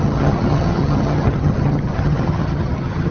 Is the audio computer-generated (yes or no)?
yes